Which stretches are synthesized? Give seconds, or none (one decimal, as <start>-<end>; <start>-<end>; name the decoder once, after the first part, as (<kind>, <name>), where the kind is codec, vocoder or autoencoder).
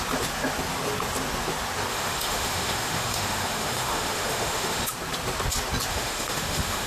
1.9-4.9 (autoencoder, DAC-VAE); 5.9-6.9